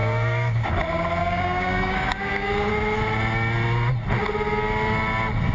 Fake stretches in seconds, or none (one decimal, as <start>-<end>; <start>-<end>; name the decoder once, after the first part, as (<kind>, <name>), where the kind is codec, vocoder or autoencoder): 0.0-0.7 (codec, DAC); 1.2-2.7